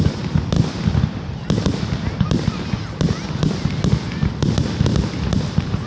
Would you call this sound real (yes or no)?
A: yes